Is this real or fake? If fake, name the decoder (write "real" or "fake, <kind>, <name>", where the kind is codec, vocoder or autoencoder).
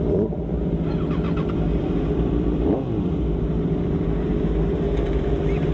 fake, vocoder, BigVGAN v2